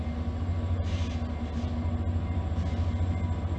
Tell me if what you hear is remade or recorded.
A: recorded